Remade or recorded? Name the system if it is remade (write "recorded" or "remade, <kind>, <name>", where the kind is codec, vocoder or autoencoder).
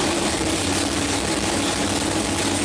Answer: remade, vocoder, BigVGAN v2